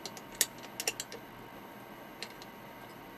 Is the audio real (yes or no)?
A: yes